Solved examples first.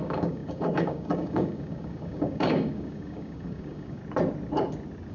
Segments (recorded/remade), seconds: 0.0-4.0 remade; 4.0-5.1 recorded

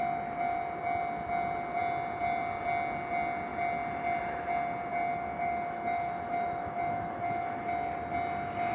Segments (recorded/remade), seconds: 0.0-5.1 recorded; 5.1-7.6 remade; 7.6-8.7 recorded

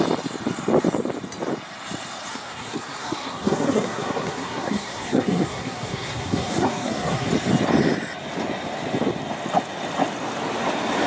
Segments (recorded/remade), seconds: 0.0-2.3 recorded; 2.3-7.3 remade; 7.3-11.1 recorded

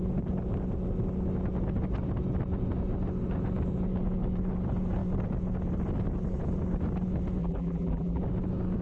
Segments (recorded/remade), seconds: 0.0-7.4 recorded; 7.4-8.2 remade; 8.2-8.8 recorded

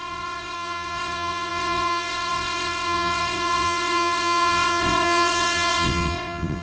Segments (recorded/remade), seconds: 0.0-6.6 remade

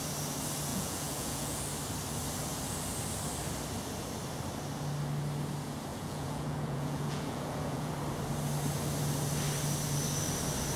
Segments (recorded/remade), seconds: 0.0-0.7 recorded; 0.7-1.6 remade; 1.6-5.9 recorded; 5.9-7.9 remade; 7.9-10.8 recorded